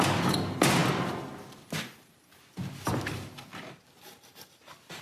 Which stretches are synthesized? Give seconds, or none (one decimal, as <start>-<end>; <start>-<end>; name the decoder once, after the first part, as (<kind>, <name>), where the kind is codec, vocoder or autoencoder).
none